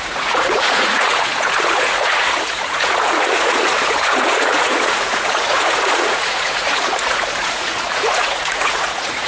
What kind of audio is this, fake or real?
fake